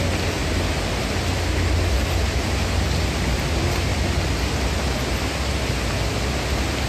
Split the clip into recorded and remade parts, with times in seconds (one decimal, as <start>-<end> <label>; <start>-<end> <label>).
0.0-6.9 recorded